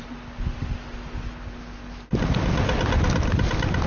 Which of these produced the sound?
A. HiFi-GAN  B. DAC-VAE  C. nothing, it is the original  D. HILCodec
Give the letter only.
C